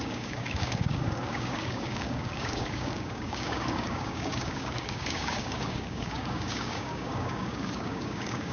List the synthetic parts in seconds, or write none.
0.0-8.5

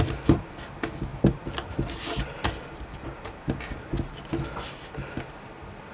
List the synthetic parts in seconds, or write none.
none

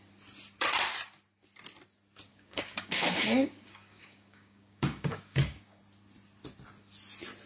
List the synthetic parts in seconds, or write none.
2.3-5.8

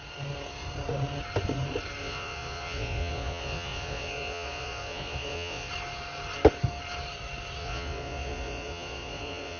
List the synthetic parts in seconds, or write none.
2.0-5.7; 7.6-9.6

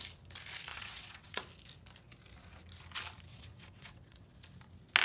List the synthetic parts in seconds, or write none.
0.7-1.4; 3.3-4.3

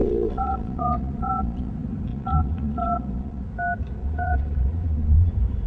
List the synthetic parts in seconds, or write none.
0.0-1.7; 2.1-3.4; 4.0-5.3

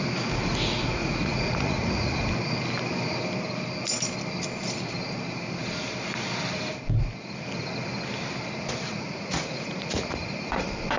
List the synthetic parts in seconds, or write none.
1.0-2.2; 8.9-10.0